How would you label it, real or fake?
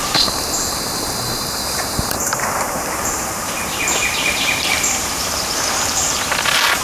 fake